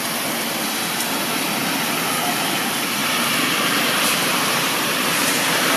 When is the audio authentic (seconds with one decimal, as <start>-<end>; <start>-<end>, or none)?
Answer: 0.0-3.0; 5.3-5.8